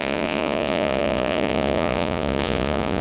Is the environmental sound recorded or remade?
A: remade